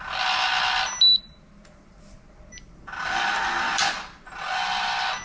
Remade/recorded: recorded